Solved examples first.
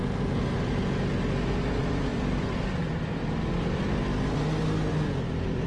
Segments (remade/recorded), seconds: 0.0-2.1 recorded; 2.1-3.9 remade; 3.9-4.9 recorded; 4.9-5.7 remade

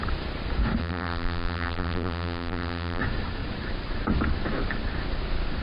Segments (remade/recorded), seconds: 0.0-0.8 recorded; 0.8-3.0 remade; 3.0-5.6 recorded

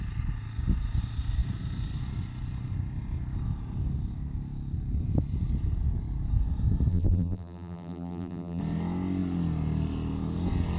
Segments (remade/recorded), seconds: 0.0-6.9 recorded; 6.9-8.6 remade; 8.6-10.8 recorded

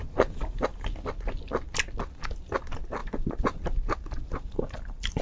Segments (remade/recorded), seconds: 0.0-3.0 recorded; 3.0-5.2 remade

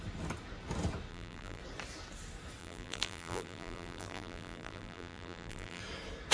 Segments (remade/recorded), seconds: 0.0-1.1 recorded; 1.1-1.6 remade; 1.6-2.6 recorded; 2.6-5.8 remade; 5.8-6.3 recorded

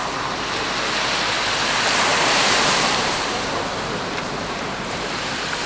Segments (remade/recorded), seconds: 0.0-0.7 remade; 0.7-2.1 recorded; 2.1-5.7 remade

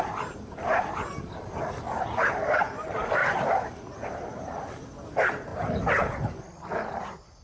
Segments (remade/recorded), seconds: 0.0-5.5 remade; 5.5-6.9 recorded; 6.9-7.4 remade

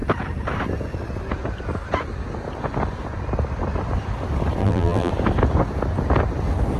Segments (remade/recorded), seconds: 0.0-4.6 recorded; 4.6-5.1 remade; 5.1-6.8 recorded